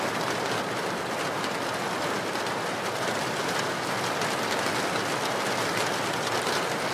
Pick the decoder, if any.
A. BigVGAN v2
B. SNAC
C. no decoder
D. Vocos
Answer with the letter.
C